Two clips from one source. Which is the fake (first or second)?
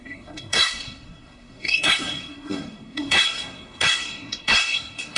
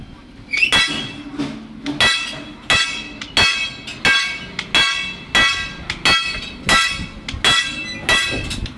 first